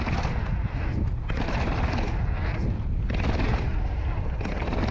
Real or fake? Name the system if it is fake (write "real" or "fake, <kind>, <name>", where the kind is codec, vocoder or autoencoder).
real